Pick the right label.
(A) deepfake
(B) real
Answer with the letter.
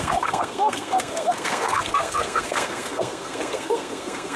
A